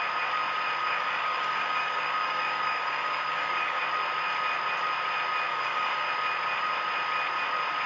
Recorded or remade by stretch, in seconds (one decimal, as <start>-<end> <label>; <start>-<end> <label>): 0.0-0.8 recorded; 0.8-3.8 remade; 3.8-5.5 recorded; 5.5-6.1 remade; 6.1-7.9 recorded

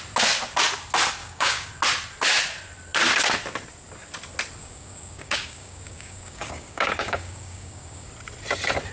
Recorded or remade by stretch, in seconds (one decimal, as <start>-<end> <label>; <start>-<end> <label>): 0.0-1.2 recorded; 1.2-1.7 remade; 1.7-4.6 recorded; 4.6-8.1 remade; 8.1-8.9 recorded